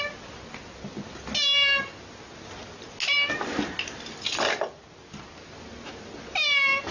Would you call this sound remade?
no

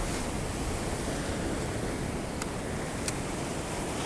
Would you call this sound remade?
no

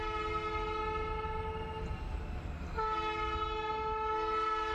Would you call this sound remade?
no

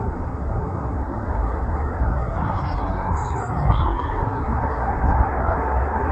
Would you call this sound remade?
yes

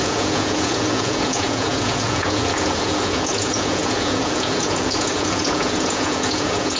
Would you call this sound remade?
yes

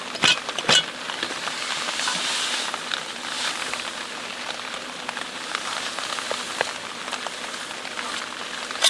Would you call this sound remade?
no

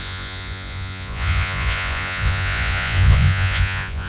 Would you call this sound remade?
yes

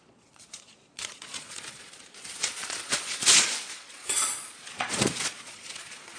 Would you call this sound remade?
yes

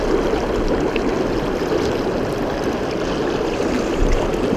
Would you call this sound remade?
no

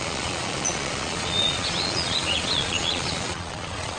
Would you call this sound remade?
yes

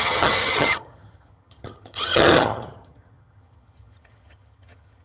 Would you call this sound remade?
yes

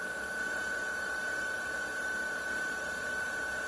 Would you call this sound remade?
no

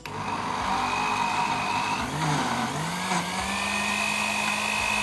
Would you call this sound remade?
no